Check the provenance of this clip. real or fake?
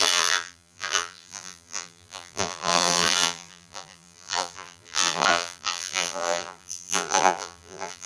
fake